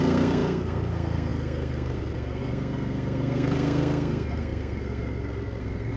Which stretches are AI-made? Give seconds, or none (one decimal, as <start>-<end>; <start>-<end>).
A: 0.0-6.0